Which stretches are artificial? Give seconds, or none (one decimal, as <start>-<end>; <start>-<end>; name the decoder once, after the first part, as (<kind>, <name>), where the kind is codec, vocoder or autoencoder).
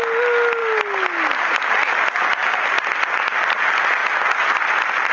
none